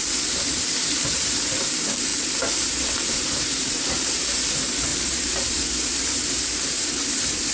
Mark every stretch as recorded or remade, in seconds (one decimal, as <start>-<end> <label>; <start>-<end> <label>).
0.0-7.5 remade